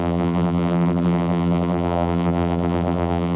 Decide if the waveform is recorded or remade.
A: remade